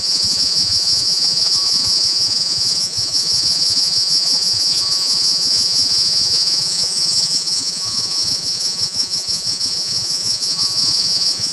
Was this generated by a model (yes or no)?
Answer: yes